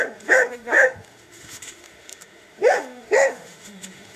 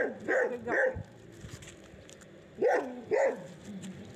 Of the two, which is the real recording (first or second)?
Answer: second